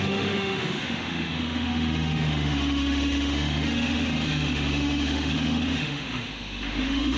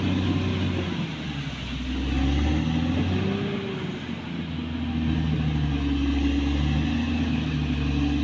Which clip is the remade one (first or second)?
first